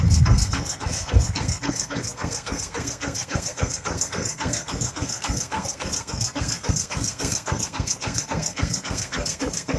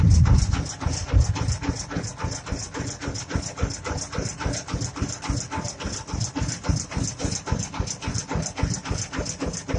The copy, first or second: first